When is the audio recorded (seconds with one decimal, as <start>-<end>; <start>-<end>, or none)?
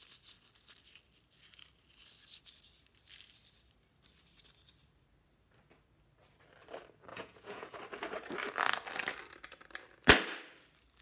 0.0-7.1; 7.8-11.0